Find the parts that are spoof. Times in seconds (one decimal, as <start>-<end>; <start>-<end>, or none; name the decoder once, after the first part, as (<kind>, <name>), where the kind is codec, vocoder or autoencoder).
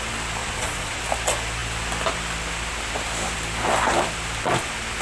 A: 0.4-1.0 (vocoder, Vocos)